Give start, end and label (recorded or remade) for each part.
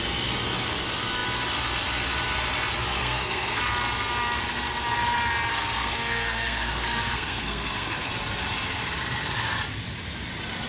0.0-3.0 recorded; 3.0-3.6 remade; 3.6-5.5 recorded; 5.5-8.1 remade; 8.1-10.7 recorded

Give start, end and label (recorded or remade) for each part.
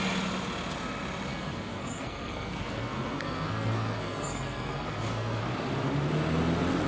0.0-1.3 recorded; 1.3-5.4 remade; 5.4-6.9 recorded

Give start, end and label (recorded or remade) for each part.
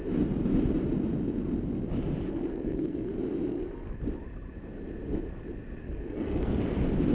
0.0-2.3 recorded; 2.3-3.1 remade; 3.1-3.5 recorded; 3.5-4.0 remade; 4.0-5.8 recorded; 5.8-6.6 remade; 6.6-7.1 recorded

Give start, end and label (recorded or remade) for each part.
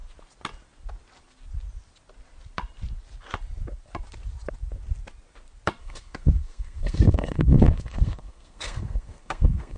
0.0-5.8 recorded; 5.8-9.8 remade